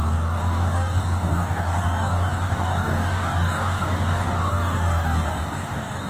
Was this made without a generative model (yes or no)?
no